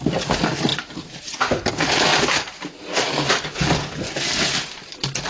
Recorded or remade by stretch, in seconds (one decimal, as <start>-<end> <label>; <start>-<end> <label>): 0.0-5.3 recorded